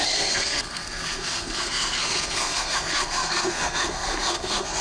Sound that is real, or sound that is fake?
fake